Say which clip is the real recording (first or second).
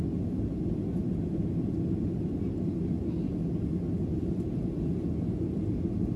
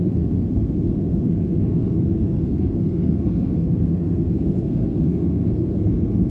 first